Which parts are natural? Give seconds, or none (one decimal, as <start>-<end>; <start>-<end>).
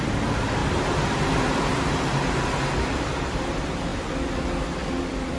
0.6-1.1; 1.7-3.5; 3.9-5.0